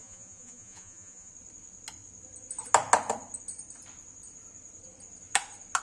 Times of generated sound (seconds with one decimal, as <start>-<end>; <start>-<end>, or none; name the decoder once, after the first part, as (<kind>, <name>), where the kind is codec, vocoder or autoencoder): 0.0-1.3 (vocoder, Vocos)